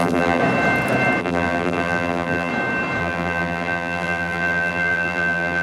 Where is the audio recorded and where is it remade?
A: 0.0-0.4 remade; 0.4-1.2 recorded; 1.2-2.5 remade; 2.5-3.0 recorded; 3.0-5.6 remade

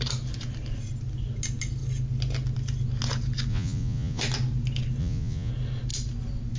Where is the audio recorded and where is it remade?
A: 0.0-3.5 recorded; 3.5-4.2 remade; 4.2-5.0 recorded; 5.0-5.5 remade; 5.5-6.6 recorded

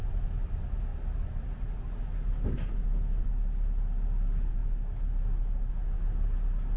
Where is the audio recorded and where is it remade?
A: 0.0-6.8 recorded

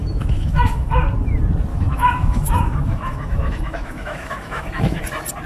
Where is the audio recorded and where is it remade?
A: 0.0-1.0 remade; 1.0-1.7 recorded; 1.7-5.0 remade; 5.0-5.5 recorded

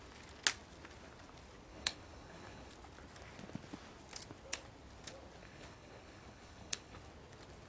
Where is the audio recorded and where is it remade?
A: 0.0-1.7 recorded; 1.7-2.7 remade; 2.7-5.4 recorded; 5.4-7.0 remade; 7.0-7.7 recorded